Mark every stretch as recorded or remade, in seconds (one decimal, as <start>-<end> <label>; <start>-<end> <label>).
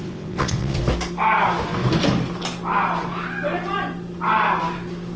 0.0-0.8 remade; 0.8-5.2 recorded